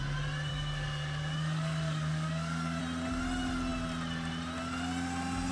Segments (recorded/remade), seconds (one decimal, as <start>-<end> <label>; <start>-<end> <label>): 0.0-0.5 recorded; 0.5-2.8 remade; 2.8-5.5 recorded